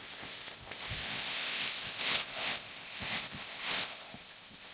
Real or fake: fake